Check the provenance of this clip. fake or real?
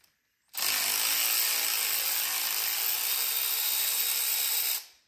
real